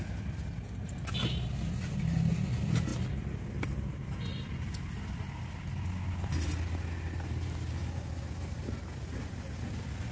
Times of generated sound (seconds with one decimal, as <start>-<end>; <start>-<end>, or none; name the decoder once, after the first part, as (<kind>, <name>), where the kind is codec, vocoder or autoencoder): none